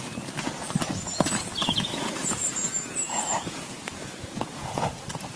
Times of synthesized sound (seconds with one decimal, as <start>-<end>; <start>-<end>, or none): 1.6-4.8

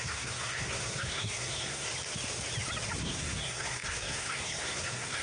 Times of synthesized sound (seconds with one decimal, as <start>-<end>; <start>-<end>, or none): 0.0-1.9; 3.0-5.2

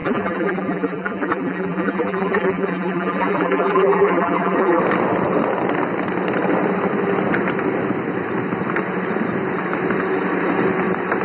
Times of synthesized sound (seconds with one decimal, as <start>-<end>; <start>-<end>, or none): 0.0-4.8

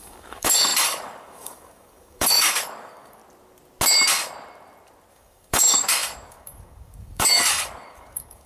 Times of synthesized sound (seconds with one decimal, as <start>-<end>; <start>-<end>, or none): 0.0-3.2; 5.1-8.5

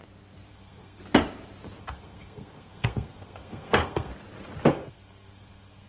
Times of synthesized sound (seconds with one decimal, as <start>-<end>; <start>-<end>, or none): 0.5-1.0; 1.8-4.1; 4.7-5.9